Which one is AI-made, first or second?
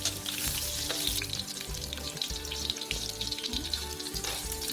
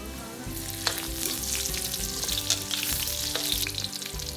first